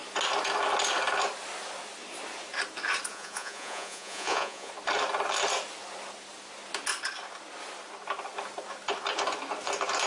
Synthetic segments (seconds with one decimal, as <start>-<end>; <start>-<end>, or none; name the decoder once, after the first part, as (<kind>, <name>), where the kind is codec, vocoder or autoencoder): 3.1-4.7 (vocoder, Vocos)